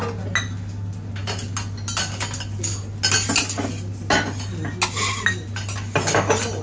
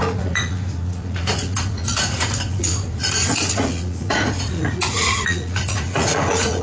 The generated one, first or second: second